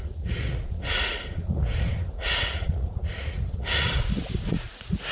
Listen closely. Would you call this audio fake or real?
fake